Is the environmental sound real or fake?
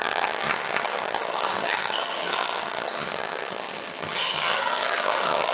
fake